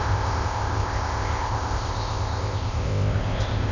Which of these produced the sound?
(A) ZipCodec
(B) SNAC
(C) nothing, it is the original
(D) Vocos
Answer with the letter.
A